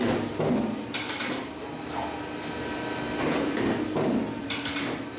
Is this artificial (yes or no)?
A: no